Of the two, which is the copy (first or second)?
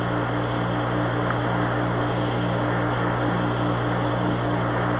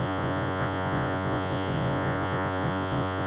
second